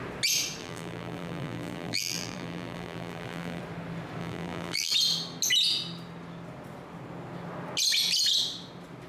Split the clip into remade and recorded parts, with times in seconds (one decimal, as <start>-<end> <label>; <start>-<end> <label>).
0.0-0.6 recorded; 0.6-3.6 remade; 3.6-4.2 recorded; 4.2-4.9 remade; 4.9-9.1 recorded